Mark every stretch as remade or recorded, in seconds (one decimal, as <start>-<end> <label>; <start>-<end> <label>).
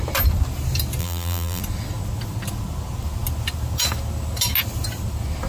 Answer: 0.0-1.0 recorded; 1.0-1.6 remade; 1.6-5.5 recorded